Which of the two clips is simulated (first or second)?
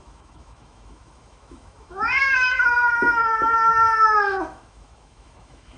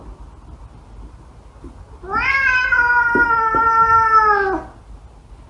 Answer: first